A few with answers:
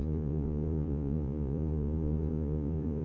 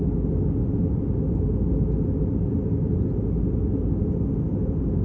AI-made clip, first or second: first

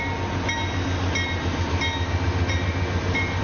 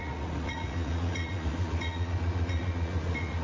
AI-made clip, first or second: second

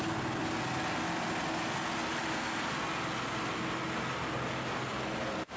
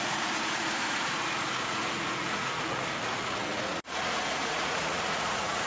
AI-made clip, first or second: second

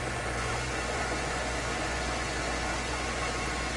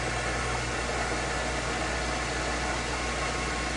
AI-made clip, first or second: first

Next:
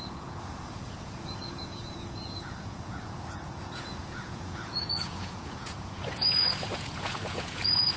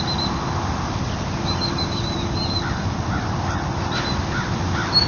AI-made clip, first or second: first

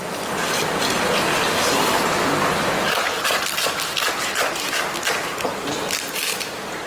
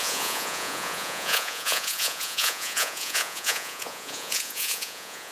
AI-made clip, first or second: second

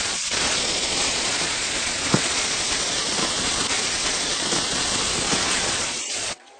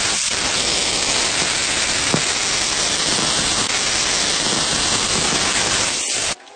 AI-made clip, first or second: first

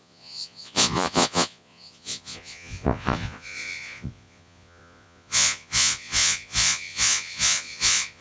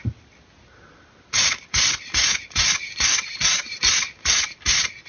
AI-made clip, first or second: first